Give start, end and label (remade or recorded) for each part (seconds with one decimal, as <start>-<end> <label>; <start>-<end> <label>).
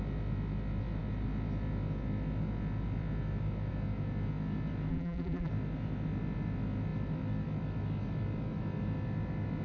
0.0-4.9 recorded; 4.9-5.5 remade; 5.5-9.6 recorded